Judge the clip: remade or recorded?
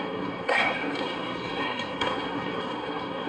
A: remade